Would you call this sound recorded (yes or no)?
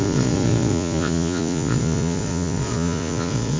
no